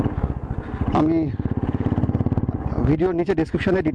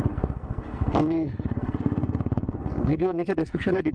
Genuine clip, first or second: first